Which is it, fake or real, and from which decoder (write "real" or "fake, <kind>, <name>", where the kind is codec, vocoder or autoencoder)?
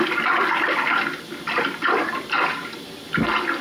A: real